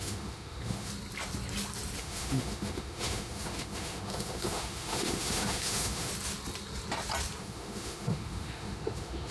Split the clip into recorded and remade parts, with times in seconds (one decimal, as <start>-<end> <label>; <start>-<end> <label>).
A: 0.0-0.9 remade; 0.9-2.0 recorded; 2.0-6.1 remade; 6.1-7.4 recorded; 7.4-9.3 remade